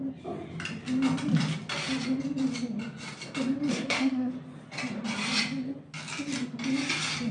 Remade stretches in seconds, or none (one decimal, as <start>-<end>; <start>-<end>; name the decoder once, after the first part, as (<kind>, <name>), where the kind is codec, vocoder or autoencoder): 3.7-4.3 (codec, SNAC)